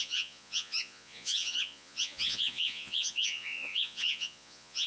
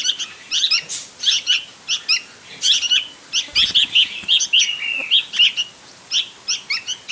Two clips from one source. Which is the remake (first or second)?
first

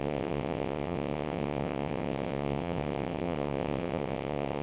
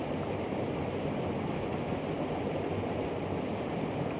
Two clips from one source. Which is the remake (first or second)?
first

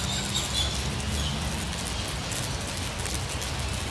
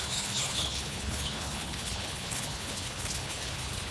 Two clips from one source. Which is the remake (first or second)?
second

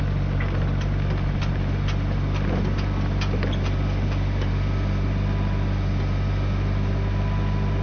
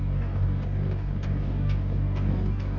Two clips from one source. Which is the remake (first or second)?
second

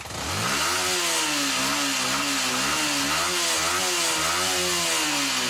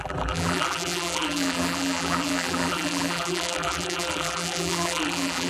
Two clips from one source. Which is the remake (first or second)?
second